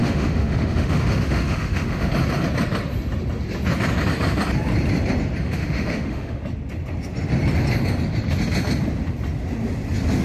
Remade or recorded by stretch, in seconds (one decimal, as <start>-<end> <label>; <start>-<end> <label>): 0.0-2.1 remade; 2.1-5.4 recorded; 5.4-6.4 remade; 6.4-10.2 recorded